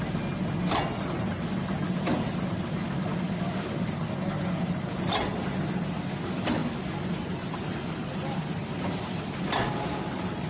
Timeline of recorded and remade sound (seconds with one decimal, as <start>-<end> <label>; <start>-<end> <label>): 0.0-10.5 recorded